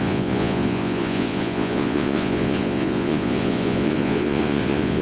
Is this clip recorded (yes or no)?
no